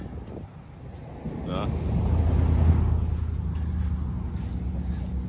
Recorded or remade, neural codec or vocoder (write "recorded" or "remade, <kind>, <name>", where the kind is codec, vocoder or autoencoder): recorded